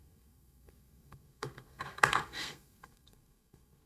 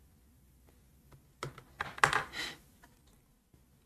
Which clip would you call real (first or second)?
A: second